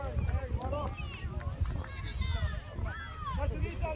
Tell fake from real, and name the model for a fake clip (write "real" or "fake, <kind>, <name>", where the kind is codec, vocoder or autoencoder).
real